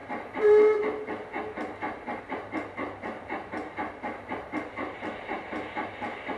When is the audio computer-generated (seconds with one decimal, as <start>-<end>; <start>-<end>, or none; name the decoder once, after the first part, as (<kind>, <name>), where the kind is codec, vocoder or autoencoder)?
2.2-6.4 (vocoder, BigVGAN v2)